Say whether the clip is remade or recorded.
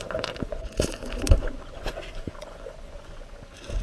remade